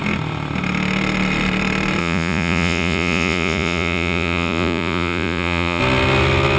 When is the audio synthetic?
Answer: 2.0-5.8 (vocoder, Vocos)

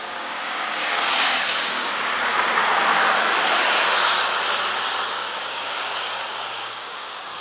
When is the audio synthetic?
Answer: 0.0-2.6 (codec, DAC); 5.1-7.4

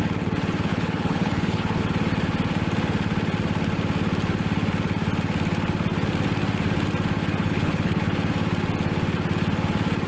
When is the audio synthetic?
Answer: 0.7-1.8 (codec, HILCodec); 7.4-8.0

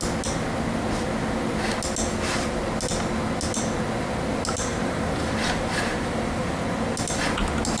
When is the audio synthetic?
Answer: 4.7-6.6 (vocoder, BigVGAN v2)

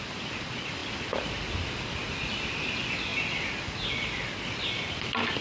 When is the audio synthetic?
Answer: none